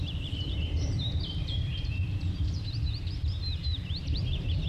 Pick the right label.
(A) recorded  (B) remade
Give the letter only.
B